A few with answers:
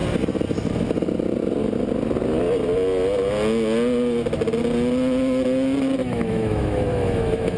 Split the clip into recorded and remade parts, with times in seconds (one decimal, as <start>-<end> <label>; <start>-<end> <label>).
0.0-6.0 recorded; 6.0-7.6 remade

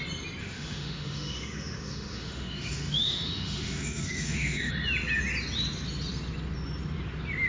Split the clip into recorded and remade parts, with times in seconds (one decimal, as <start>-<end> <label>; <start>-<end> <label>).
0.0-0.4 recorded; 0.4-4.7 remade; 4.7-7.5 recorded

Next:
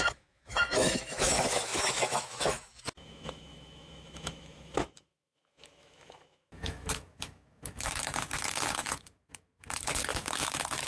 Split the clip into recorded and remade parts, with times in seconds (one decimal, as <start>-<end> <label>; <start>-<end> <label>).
0.0-10.9 remade

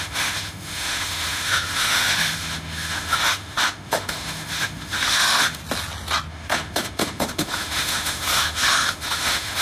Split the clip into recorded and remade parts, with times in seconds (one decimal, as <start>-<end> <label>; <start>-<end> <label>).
0.0-5.6 remade; 5.6-6.3 recorded; 6.3-9.6 remade